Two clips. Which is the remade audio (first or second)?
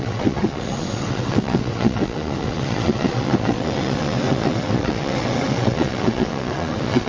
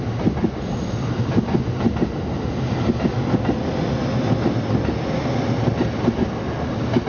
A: first